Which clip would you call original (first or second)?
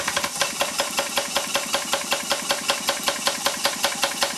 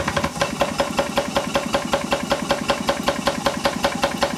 second